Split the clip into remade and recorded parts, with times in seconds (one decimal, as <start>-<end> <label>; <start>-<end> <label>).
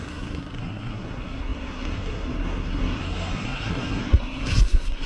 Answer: 0.0-5.1 remade